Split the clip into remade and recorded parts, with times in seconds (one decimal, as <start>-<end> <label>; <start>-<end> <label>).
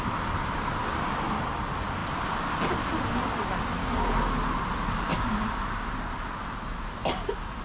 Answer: 0.0-7.6 recorded